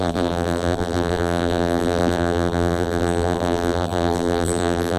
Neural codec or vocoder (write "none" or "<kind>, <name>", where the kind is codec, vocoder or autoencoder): vocoder, BigVGAN v2